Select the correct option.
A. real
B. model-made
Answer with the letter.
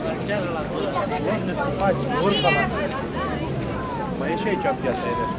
A